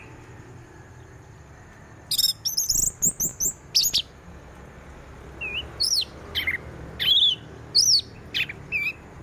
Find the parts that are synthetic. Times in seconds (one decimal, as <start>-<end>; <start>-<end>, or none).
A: none